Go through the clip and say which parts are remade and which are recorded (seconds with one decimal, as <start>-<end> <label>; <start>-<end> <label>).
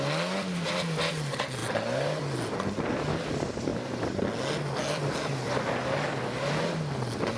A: 0.0-7.4 recorded